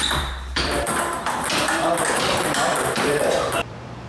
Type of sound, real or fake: fake